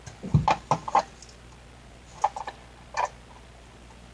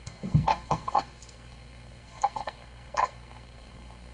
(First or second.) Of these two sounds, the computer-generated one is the second